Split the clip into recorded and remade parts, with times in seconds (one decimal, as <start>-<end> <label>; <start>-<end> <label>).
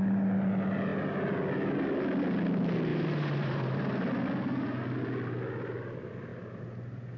0.0-2.9 recorded; 2.9-4.1 remade; 4.1-6.3 recorded; 6.3-7.2 remade